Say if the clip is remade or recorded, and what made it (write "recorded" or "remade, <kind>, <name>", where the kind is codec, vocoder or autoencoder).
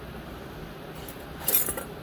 remade, vocoder, BigVGAN v2